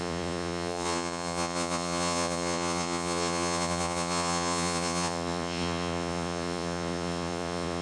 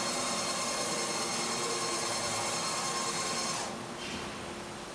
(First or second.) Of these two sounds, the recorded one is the second